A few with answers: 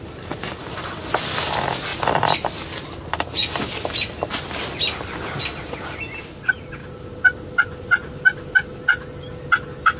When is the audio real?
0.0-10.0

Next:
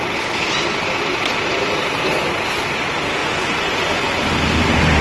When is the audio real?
0.0-3.2; 4.2-5.0

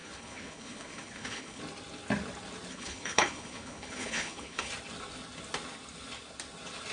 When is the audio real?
1.6-2.7; 4.7-6.9

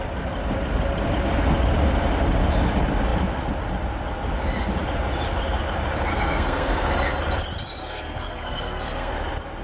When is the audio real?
0.0-6.1; 6.9-7.8; 9.1-9.6

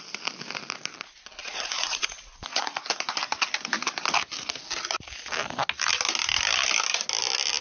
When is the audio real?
0.0-1.4; 2.8-7.6

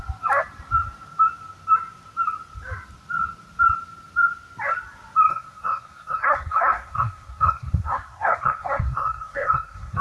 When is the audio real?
0.0-5.3

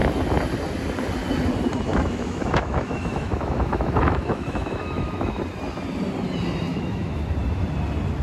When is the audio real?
0.0-1.9; 5.4-6.7; 7.2-8.2